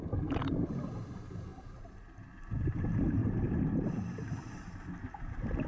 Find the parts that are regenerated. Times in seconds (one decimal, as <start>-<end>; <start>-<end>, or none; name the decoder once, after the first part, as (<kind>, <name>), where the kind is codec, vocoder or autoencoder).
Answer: 1.5-2.0 (vocoder, BigVGAN v2); 3.2-5.0